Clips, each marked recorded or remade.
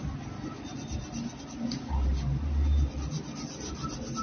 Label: recorded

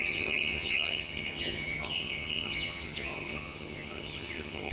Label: remade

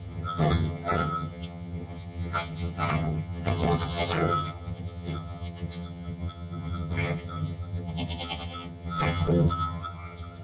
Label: remade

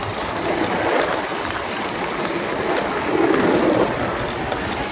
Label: recorded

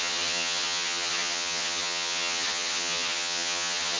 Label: remade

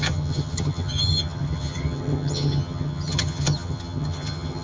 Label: remade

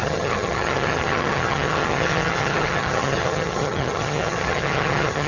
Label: remade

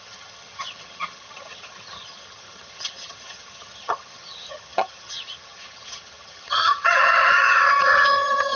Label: remade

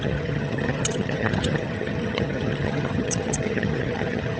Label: remade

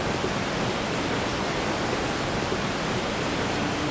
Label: recorded